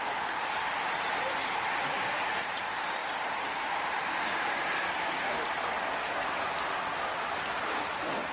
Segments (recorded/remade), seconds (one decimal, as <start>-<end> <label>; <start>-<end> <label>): 0.0-8.3 recorded